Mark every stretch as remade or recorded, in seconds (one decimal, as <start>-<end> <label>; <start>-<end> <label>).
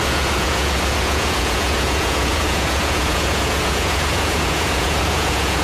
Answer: 0.0-5.6 remade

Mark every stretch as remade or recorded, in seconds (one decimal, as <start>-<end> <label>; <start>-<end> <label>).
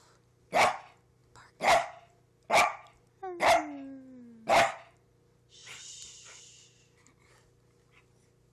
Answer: 0.0-8.5 recorded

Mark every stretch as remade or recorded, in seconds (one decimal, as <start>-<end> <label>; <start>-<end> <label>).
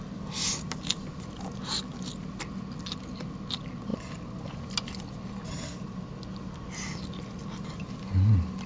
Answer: 0.0-8.7 recorded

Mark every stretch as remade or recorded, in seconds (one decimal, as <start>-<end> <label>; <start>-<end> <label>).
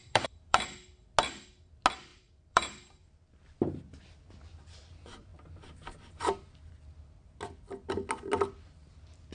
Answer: 0.0-0.6 remade; 0.6-2.1 recorded; 2.1-3.3 remade; 3.3-9.3 recorded